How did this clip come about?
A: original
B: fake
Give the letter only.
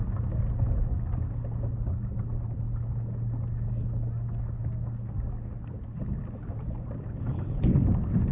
A